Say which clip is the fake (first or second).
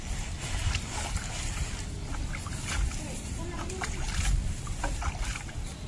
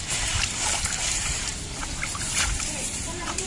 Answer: second